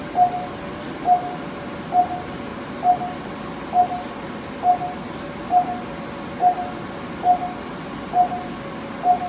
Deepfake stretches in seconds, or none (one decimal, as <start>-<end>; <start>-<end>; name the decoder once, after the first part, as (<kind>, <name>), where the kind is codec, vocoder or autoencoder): none